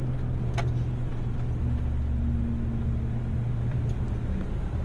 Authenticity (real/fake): real